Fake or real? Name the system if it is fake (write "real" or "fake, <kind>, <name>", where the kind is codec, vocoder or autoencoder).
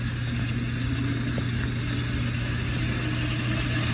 real